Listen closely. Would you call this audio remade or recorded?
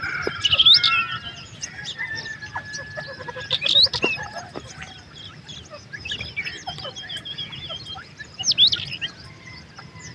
recorded